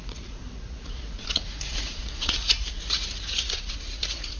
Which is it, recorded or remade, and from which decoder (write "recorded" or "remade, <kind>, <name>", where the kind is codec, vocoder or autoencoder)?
remade, vocoder, Vocos